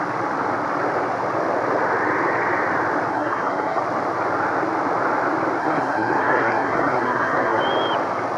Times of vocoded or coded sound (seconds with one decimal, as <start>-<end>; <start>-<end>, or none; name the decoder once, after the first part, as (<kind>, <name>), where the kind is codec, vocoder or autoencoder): 3.1-3.8 (codec, SNAC); 5.6-7.6